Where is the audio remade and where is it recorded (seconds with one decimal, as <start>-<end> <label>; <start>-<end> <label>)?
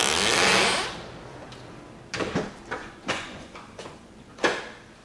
0.0-2.8 recorded; 2.8-4.6 remade; 4.6-5.0 recorded